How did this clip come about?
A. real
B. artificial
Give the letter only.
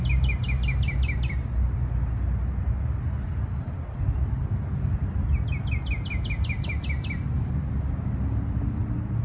A